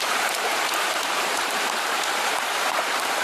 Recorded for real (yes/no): no